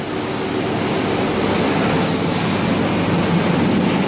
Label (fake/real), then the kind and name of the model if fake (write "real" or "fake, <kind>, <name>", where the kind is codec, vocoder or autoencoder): real